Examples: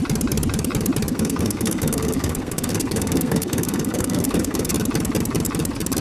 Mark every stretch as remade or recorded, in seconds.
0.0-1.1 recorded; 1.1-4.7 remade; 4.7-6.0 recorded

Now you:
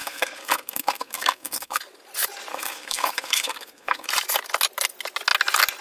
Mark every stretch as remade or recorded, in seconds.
0.0-1.8 remade; 1.8-2.5 recorded; 2.5-4.1 remade; 4.1-5.8 recorded

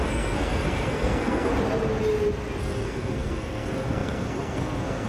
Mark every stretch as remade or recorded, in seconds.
0.0-1.5 remade; 1.5-2.6 recorded; 2.6-5.1 remade

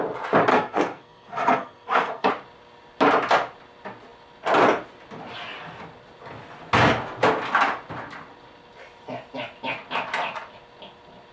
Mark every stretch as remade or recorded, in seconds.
0.0-0.5 recorded; 0.5-2.3 remade; 2.3-11.3 recorded

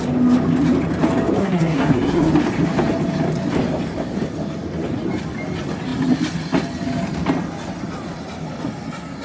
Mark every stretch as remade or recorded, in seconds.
0.0-1.4 recorded; 1.4-2.3 remade; 2.3-9.2 recorded

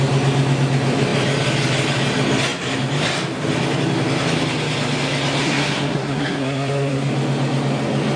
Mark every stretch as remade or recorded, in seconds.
0.0-5.4 recorded; 5.4-7.1 remade; 7.1-8.2 recorded

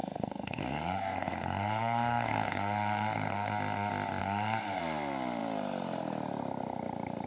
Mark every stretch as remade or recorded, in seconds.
0.0-3.5 remade; 3.5-4.2 recorded; 4.2-4.8 remade; 4.8-7.3 recorded

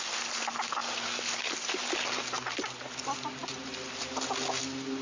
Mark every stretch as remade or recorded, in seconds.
0.0-5.0 recorded